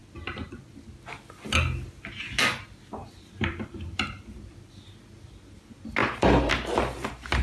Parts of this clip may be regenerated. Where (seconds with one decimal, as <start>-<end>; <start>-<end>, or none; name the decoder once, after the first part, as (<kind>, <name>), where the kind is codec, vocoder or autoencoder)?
0.0-0.7 (vocoder, BigVGAN v2); 3.0-4.7; 6.0-6.5

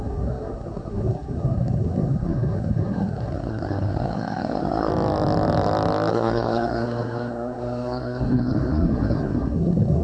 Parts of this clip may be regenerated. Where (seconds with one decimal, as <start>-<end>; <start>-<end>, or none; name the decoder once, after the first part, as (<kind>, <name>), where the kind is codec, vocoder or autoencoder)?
0.0-4.9 (codec, SNAC); 6.1-10.0